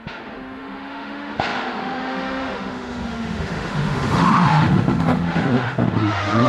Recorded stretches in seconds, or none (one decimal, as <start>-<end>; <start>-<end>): none